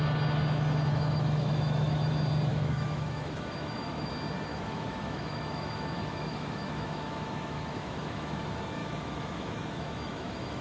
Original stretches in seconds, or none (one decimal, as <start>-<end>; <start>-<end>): 0.0-0.9; 2.1-2.5; 4.1-4.5; 8.4-8.8